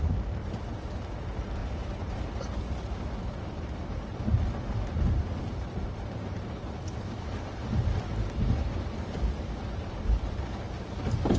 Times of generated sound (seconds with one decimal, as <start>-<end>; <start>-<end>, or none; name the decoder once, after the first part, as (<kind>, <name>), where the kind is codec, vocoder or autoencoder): 0.0-0.4 (vocoder, BigVGAN v2); 1.1-7.6; 9.4-11.4